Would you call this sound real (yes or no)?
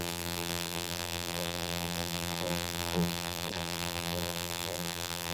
no